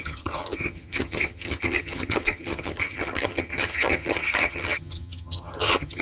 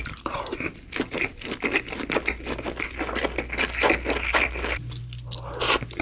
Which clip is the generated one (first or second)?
first